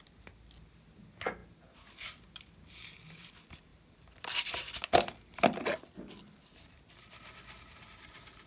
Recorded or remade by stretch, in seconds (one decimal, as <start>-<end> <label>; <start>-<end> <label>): 0.0-3.7 recorded; 3.7-4.6 remade; 4.6-8.5 recorded